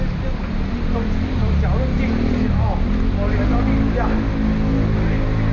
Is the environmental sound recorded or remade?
recorded